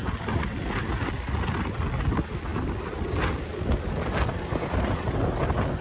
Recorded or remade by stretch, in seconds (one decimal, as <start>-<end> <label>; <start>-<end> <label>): 0.0-5.8 recorded